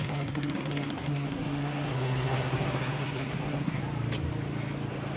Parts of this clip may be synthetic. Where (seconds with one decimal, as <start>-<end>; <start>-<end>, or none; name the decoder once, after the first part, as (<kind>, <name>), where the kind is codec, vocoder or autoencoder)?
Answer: 0.0-3.8 (codec, SNAC)

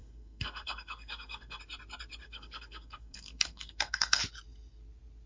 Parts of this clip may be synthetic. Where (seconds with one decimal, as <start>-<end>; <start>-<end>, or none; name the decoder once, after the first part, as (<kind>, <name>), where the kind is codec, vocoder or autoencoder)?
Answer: 0.0-1.6 (codec, SNAC); 2.2-4.2

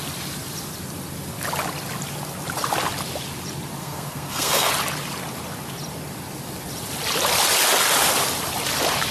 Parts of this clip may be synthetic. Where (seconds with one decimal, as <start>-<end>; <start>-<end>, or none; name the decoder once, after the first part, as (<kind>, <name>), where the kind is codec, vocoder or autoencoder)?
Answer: 3.8-4.7 (codec, SNAC)

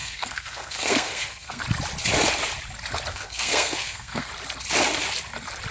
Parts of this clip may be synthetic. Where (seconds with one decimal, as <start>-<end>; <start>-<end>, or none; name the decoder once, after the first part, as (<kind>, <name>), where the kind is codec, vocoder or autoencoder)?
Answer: 0.0-1.6 (codec, SNAC); 3.1-4.3

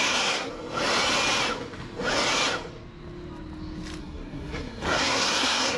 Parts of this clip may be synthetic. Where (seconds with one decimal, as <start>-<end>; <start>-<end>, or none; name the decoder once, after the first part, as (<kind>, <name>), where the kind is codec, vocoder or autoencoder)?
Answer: 0.0-0.5 (codec, SNAC); 4.0-5.8